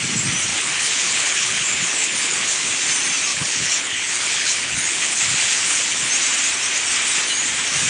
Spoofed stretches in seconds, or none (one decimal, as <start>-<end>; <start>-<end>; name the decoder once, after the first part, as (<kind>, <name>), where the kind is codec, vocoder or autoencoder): 0.5-2.7 (codec, HILCodec); 3.3-6.1